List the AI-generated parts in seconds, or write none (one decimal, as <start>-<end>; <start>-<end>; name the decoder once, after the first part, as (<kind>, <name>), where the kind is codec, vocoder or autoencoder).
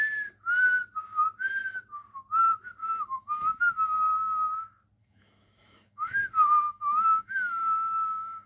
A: 2.8-4.5 (autoencoder, DAC-VAE); 5.0-6.2; 6.7-8.5